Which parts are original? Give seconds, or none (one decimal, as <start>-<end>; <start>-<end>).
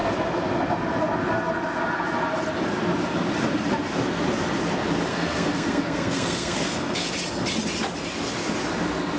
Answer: 0.0-5.1; 7.1-9.2